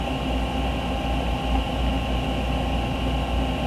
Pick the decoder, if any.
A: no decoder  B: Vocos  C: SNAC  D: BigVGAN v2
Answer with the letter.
A